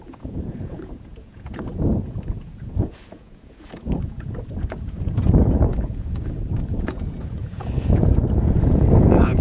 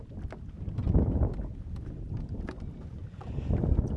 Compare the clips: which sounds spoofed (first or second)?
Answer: first